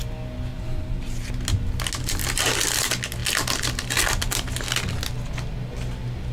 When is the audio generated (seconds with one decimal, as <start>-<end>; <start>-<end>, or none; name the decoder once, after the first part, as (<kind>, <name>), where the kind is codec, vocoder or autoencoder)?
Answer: 0.5-1.3 (vocoder, BigVGAN v2)